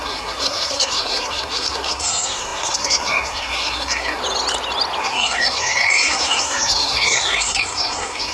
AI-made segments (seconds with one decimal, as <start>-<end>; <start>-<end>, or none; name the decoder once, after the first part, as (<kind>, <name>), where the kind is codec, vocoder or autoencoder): 0.0-4.2 (codec, SNAC); 5.0-8.3